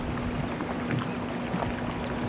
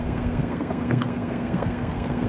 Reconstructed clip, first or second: second